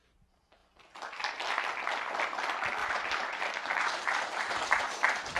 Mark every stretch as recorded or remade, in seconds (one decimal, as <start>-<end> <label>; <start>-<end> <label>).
0.0-2.8 recorded; 2.8-3.8 remade; 3.8-5.4 recorded